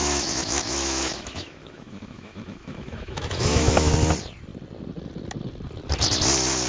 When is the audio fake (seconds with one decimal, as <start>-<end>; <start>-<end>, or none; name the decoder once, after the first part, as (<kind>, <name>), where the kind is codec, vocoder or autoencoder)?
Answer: 0.0-3.9 (autoencoder, DAC-VAE)